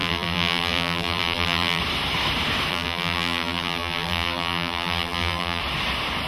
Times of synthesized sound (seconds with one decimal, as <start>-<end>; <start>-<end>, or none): 0.0-1.8; 2.7-5.6